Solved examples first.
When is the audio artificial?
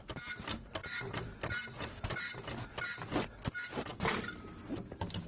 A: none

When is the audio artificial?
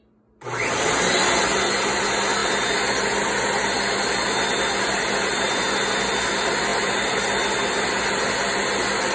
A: none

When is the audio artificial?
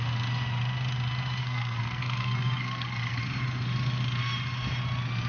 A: 1.4-3.2 (codec, SNAC)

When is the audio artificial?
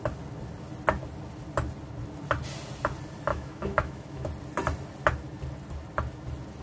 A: 3.3-4.3 (autoencoder, DAC-VAE)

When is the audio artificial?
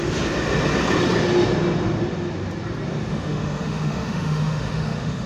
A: 3.1-5.3 (autoencoder, DAC-VAE)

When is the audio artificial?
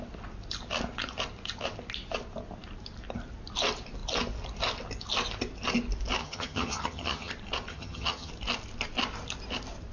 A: 6.2-7.3 (vocoder, HiFi-GAN); 7.7-8.3